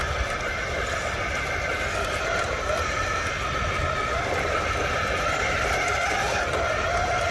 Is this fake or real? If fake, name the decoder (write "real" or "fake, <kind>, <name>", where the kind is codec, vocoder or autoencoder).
real